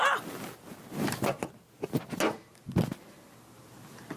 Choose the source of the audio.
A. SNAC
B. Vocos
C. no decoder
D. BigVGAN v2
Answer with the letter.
C